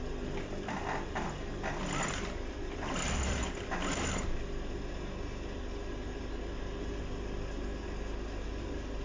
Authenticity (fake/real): real